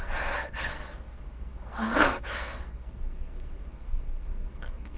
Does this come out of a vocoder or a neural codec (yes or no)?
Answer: yes